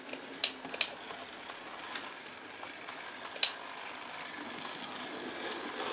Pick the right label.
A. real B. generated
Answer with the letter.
A